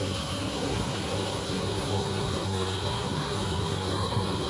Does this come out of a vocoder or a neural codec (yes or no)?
yes